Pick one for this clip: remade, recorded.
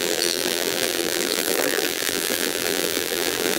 remade